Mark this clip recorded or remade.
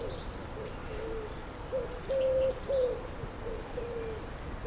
recorded